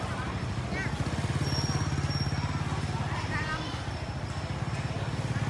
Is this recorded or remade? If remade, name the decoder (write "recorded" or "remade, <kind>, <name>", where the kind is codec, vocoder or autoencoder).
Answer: recorded